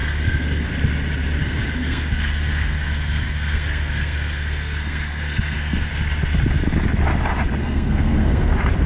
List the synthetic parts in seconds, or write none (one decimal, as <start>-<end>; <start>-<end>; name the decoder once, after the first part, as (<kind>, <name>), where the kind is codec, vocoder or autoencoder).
0.0-0.7 (codec, SNAC); 1.4-5.9; 7.6-8.5

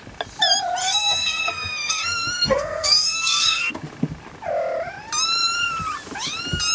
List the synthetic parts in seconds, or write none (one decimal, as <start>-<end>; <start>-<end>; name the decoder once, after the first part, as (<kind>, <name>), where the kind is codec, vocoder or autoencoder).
0.8-3.7 (codec, SNAC)